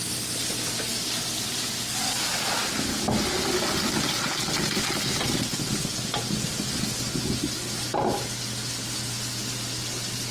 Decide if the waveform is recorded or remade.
recorded